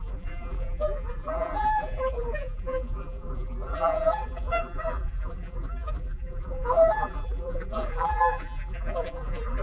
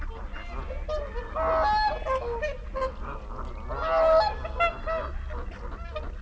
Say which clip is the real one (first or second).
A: second